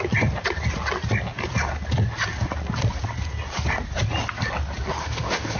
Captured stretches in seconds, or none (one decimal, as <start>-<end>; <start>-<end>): 0.0-5.0